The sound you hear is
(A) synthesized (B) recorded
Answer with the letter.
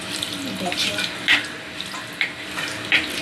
B